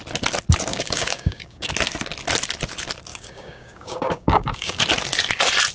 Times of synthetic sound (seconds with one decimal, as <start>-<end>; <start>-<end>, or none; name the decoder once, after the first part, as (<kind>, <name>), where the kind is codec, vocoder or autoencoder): 0.7-1.7 (codec, DAC); 3.1-4.8